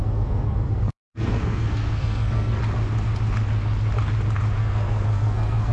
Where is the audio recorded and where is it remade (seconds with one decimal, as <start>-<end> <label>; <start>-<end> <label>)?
0.0-2.6 remade; 2.6-4.6 recorded; 4.6-5.7 remade